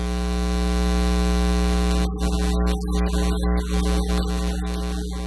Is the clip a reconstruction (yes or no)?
no